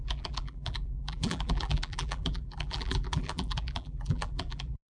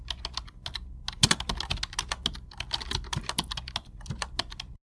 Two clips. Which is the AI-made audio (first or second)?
first